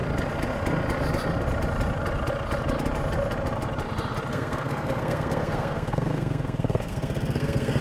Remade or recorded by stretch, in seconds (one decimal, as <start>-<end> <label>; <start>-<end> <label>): 0.0-4.3 recorded; 4.3-7.8 remade